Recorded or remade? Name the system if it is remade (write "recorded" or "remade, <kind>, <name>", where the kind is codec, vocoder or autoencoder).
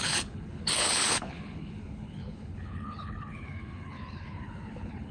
remade, codec, HILCodec